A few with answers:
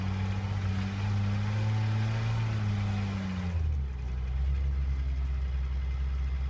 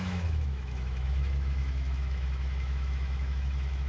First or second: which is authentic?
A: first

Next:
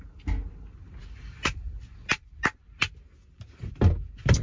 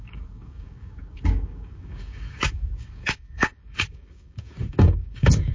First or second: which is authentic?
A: first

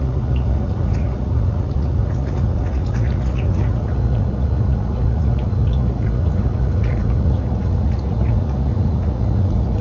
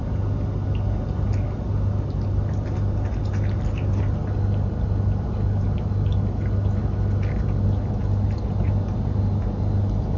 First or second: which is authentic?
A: second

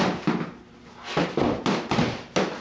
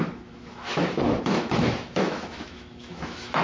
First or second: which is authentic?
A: first